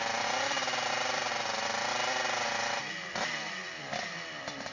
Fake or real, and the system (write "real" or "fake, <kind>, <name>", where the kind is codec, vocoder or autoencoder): real